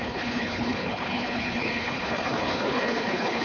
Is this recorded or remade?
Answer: remade